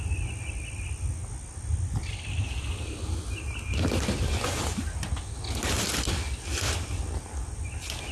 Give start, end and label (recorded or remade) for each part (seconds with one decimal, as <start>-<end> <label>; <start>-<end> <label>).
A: 0.0-8.1 recorded